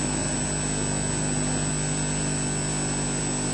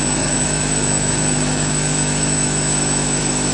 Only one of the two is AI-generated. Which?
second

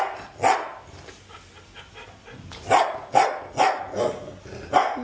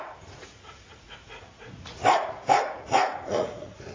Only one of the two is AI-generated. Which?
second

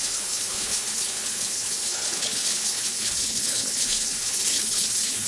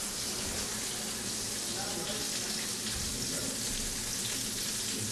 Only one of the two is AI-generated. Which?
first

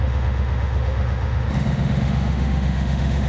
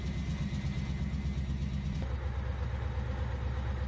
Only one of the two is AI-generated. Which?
first